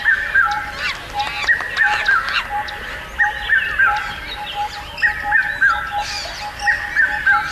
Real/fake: real